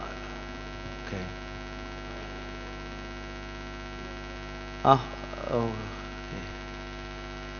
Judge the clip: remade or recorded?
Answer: recorded